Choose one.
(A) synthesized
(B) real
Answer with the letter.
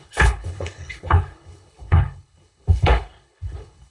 A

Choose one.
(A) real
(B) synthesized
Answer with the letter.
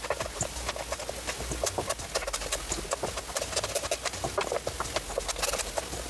A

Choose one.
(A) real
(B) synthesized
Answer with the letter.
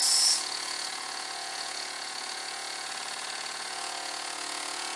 B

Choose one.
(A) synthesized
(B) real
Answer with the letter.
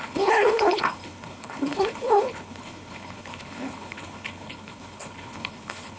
A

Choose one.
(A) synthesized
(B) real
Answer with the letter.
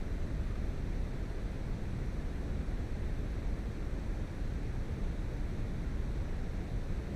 B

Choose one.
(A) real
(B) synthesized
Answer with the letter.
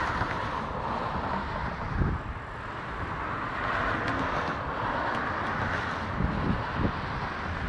A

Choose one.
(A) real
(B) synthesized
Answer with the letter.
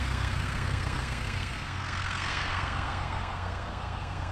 B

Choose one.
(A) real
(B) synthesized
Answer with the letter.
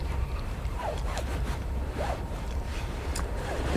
B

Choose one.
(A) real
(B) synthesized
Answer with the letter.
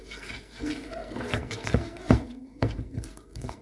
B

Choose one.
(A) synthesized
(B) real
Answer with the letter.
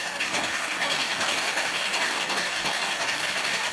A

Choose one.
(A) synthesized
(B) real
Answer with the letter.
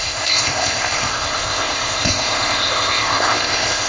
A